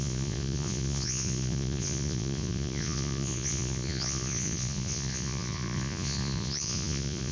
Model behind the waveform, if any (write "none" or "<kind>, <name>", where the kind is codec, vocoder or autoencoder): vocoder, Vocos